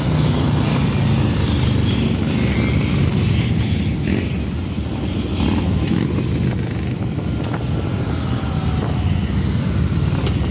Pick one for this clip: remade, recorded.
recorded